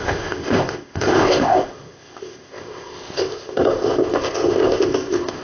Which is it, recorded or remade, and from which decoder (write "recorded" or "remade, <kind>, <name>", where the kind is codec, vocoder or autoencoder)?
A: remade, codec, ZipCodec